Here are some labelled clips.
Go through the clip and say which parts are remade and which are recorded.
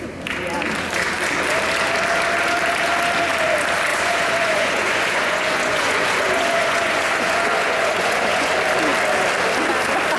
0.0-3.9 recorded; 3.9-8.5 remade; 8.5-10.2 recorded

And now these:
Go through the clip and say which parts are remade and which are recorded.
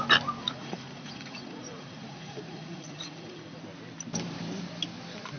0.0-0.4 recorded; 0.4-3.6 remade; 3.6-5.4 recorded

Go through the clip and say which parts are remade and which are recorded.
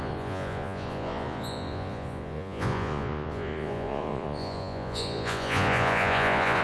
0.0-6.6 remade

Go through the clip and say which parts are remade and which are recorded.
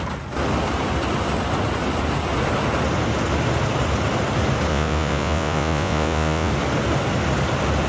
0.0-4.7 recorded; 4.7-6.5 remade; 6.5-7.9 recorded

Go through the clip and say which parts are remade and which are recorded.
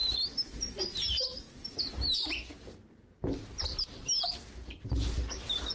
0.0-5.7 recorded